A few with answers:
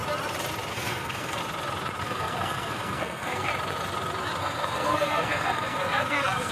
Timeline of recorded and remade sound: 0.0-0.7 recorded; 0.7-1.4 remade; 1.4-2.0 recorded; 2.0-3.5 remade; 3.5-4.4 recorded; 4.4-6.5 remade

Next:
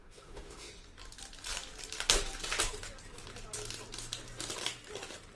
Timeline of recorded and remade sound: 0.0-0.7 remade; 0.7-5.4 recorded

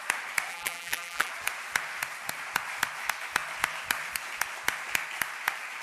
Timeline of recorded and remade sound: 0.0-0.5 recorded; 0.5-1.3 remade; 1.3-5.8 recorded

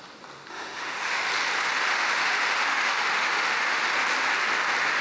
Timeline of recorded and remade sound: 0.0-0.5 recorded; 0.5-1.3 remade; 1.3-1.9 recorded; 1.9-3.8 remade; 3.8-5.0 recorded

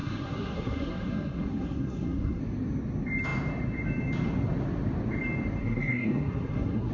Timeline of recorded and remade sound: 0.0-2.4 remade; 2.4-5.6 recorded; 5.6-6.9 remade

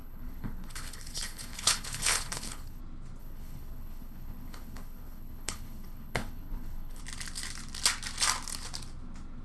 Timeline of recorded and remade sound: 0.0-2.8 remade; 2.8-3.2 recorded; 3.2-7.0 remade; 7.0-9.4 recorded

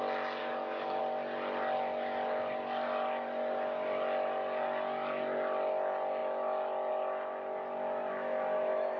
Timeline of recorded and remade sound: 0.0-0.4 recorded; 0.4-1.0 remade; 1.0-9.0 recorded

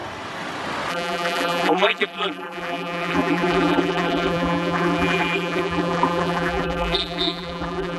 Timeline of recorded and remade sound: 0.0-0.9 recorded; 0.9-8.0 remade